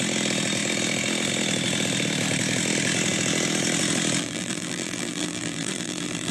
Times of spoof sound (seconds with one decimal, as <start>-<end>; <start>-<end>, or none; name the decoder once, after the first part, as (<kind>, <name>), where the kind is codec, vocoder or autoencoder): 4.2-6.3 (vocoder, BigVGAN v2)